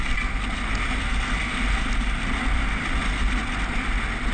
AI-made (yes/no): no